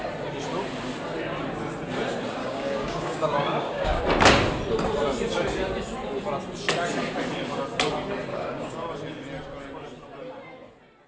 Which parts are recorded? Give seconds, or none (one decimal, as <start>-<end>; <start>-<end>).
0.0-2.4; 4.0-8.3; 8.9-11.1

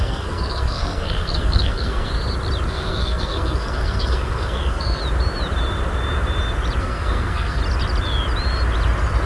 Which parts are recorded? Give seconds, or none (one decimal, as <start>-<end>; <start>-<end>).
2.1-2.7; 5.0-6.8; 7.6-9.3